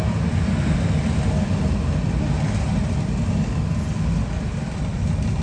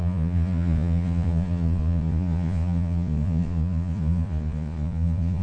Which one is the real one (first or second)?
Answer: first